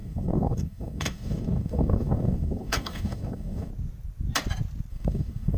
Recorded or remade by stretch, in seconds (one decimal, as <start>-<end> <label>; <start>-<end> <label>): 0.0-3.7 remade; 3.7-4.9 recorded; 4.9-5.6 remade